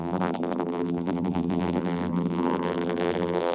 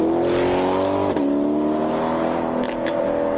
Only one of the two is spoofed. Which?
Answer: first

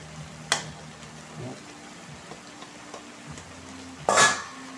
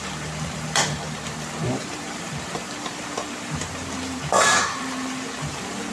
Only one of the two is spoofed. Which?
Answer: second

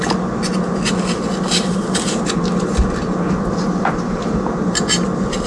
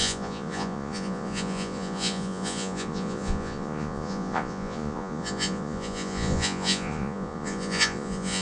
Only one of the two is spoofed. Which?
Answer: second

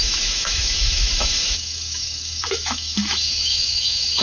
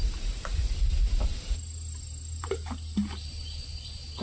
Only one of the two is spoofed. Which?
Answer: first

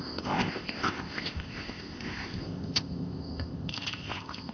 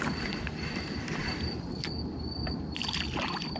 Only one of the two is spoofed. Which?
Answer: first